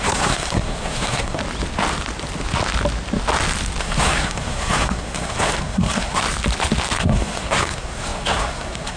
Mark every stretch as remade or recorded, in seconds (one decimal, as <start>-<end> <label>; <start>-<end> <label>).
0.0-1.4 remade; 1.4-3.8 recorded; 3.8-6.2 remade; 6.2-7.0 recorded; 7.0-9.0 remade